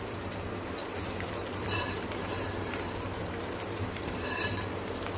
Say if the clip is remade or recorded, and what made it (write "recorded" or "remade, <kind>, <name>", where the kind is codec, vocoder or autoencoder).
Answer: remade, vocoder, BigVGAN v2